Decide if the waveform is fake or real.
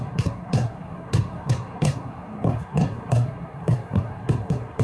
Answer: fake